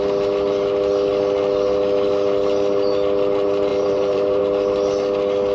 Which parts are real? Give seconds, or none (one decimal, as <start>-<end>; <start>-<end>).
0.0-3.7; 4.4-5.5